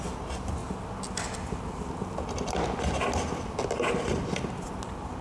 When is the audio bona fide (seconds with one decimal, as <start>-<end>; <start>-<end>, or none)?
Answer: 0.0-5.2